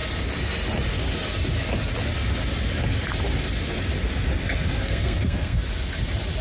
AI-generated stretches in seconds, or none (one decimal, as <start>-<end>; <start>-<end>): 4.8-5.6